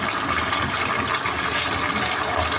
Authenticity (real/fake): real